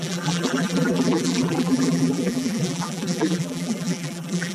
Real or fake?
fake